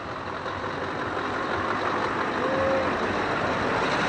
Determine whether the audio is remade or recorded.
recorded